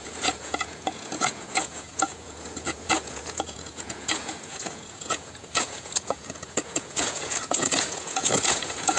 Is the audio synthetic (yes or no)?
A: yes